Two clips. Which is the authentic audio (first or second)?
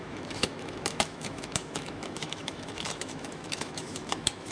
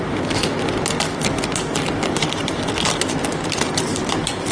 second